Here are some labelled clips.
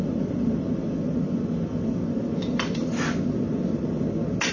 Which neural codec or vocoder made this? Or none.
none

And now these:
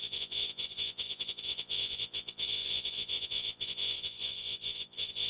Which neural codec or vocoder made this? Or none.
vocoder, Vocos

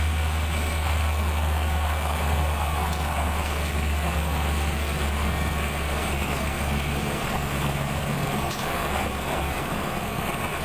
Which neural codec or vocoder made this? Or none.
codec, SNAC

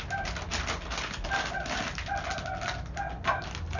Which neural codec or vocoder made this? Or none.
none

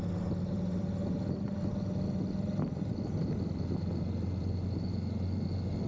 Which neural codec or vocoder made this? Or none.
none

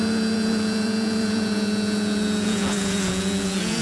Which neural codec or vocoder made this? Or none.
vocoder, Vocos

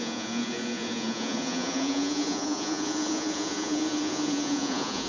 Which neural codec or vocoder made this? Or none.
vocoder, Vocos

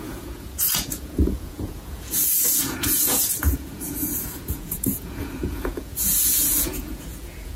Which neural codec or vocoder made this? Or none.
vocoder, Vocos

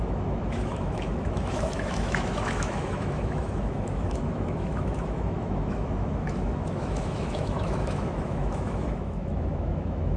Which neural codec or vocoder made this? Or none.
autoencoder, DAC-VAE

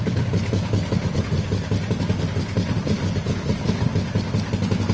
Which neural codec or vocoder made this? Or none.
none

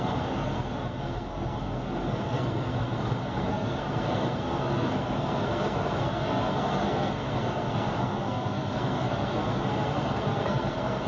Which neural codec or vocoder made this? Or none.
codec, SNAC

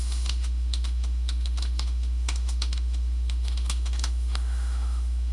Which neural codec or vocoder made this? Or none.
autoencoder, DAC-VAE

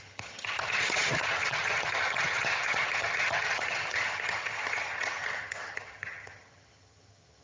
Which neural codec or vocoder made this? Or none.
vocoder, HiFi-GAN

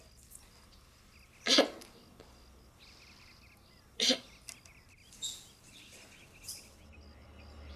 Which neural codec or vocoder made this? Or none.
none